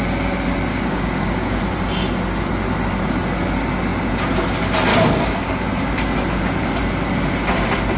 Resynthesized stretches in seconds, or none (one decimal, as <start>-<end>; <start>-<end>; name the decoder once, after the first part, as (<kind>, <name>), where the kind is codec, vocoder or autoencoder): 0.7-1.6 (codec, DAC); 4.9-5.7